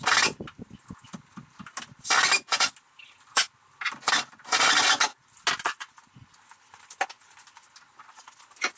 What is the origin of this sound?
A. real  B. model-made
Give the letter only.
A